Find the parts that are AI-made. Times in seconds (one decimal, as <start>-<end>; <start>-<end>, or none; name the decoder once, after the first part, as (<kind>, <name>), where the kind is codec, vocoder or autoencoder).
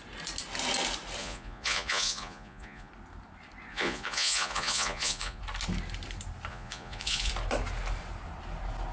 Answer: 1.2-2.9 (vocoder, Vocos); 3.7-5.4; 6.5-7.3